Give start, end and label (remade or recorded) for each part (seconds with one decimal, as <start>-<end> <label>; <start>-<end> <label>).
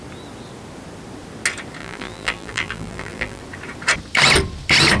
0.0-1.8 recorded; 1.8-3.4 remade; 3.4-5.0 recorded